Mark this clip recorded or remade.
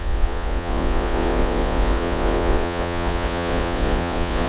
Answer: remade